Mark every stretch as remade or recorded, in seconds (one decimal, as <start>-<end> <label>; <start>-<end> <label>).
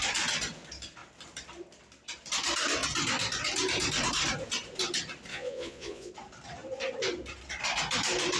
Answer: 0.0-5.3 recorded; 5.3-6.1 remade; 6.1-8.4 recorded